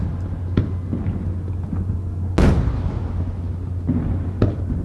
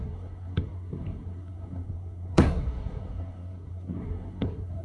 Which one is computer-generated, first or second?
second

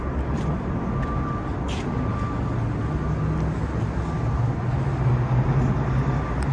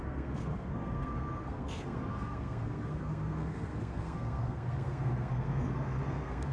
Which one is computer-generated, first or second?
second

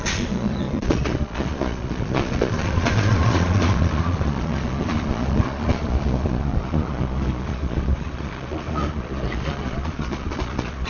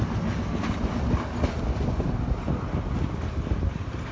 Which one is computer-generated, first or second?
first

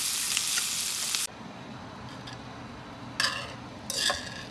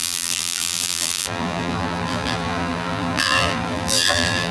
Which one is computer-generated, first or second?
second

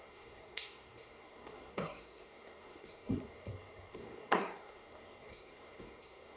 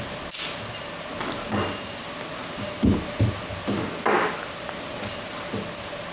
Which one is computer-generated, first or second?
first